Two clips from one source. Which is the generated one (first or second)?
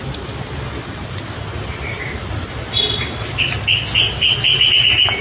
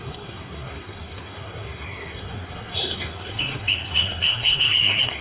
second